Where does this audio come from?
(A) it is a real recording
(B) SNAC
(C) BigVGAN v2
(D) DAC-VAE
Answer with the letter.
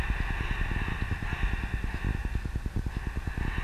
A